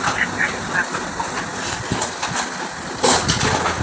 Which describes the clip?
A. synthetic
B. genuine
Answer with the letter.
B